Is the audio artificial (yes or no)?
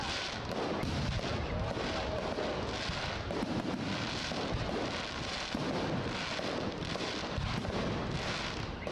no